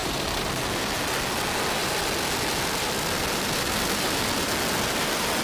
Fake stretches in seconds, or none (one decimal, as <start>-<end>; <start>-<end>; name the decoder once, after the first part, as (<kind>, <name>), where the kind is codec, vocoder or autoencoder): 0.0-0.6 (vocoder, BigVGAN v2)